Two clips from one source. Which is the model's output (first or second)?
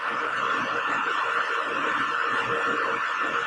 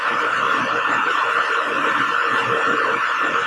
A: second